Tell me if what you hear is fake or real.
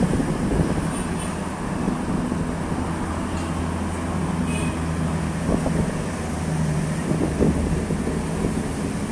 real